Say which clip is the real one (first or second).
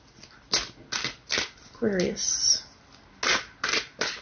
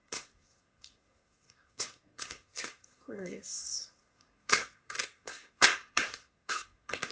first